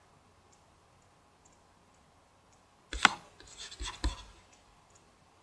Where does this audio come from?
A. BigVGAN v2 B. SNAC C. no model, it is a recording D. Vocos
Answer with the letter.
C